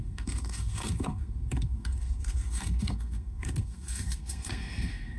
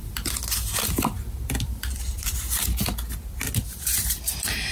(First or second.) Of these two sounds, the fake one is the first